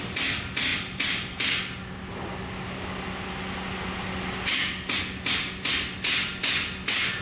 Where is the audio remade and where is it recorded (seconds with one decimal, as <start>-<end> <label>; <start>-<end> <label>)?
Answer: 0.0-7.2 recorded